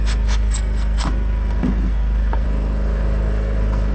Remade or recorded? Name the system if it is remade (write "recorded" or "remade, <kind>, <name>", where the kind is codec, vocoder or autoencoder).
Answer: remade, codec, SNAC